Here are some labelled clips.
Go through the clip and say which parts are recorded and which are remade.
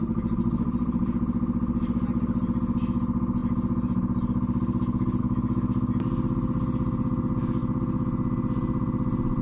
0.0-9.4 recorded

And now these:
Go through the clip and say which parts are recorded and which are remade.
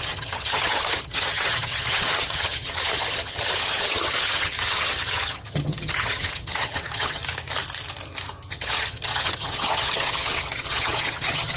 0.0-7.2 remade; 7.2-8.5 recorded; 8.5-11.6 remade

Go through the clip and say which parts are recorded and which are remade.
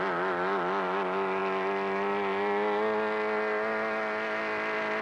0.0-5.0 recorded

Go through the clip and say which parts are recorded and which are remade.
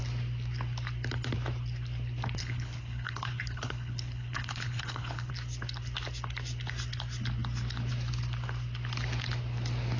0.0-2.4 recorded; 2.4-5.3 remade; 5.3-10.0 recorded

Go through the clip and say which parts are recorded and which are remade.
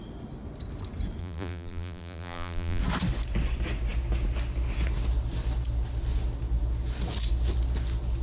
0.0-1.2 recorded; 1.2-2.8 remade; 2.8-8.2 recorded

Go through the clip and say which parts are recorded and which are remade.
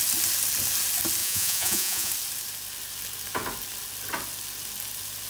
0.0-1.2 recorded; 1.2-2.1 remade; 2.1-5.3 recorded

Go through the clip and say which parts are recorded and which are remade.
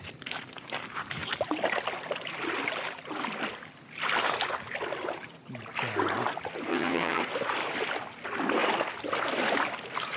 0.0-6.7 recorded; 6.7-7.2 remade; 7.2-10.2 recorded